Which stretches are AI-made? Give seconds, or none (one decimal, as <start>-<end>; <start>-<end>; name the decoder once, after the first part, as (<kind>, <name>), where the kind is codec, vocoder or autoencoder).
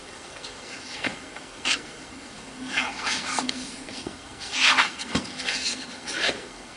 0.0-6.8 (codec, SNAC)